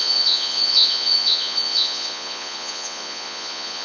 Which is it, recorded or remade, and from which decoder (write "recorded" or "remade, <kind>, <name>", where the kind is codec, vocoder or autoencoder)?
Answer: remade, vocoder, Vocos